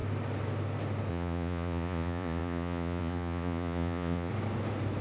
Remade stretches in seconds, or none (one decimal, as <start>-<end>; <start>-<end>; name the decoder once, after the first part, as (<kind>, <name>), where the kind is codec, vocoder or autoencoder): 1.1-4.3 (vocoder, Vocos)